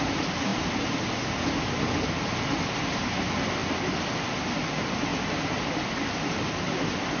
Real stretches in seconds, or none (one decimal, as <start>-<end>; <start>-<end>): 0.0-7.2